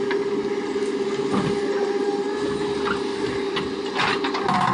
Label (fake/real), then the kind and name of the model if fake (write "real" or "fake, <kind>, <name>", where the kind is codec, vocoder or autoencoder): real